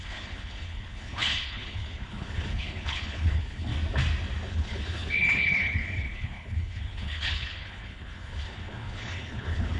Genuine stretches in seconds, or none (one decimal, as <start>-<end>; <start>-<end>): 3.7-4.5